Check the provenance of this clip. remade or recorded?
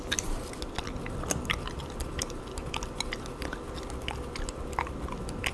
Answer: recorded